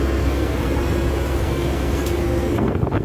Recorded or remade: remade